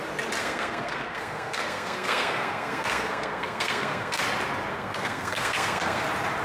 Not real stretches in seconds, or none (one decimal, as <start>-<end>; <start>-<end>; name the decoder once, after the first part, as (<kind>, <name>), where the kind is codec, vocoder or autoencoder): 0.4-4.2 (codec, SNAC); 4.7-6.0